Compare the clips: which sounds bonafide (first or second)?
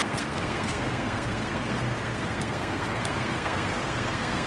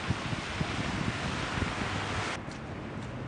second